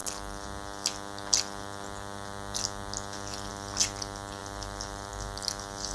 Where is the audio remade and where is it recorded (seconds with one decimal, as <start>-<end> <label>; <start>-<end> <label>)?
0.0-5.9 recorded